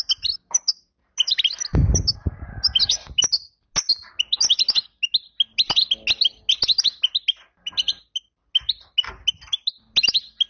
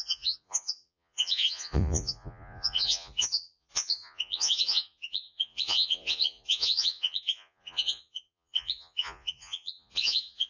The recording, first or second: first